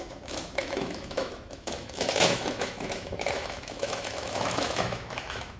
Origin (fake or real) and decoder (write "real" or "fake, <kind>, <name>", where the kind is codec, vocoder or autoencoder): fake, autoencoder, DAC-VAE